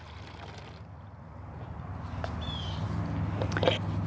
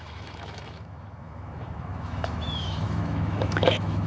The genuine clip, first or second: first